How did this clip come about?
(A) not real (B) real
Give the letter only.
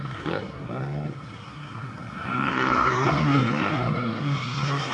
A